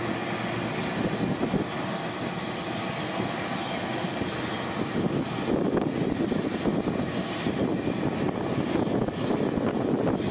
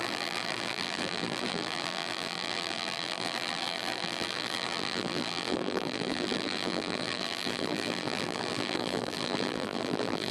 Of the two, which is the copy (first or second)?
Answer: second